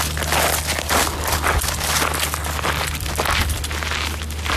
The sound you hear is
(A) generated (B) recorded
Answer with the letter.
B